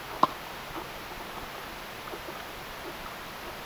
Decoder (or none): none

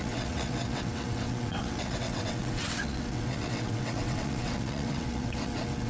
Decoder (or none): vocoder, WaveNeXt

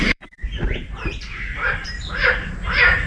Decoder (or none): vocoder, BigVGAN v2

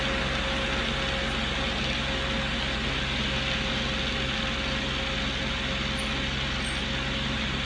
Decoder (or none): none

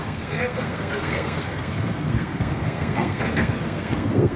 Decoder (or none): codec, SNAC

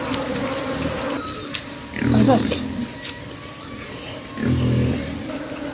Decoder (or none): none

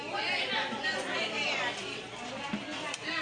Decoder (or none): none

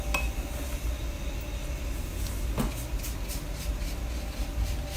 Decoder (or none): none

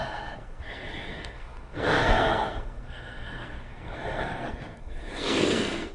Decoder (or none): codec, SNAC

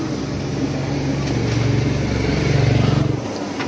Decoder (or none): none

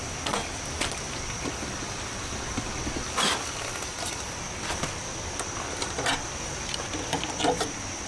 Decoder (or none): none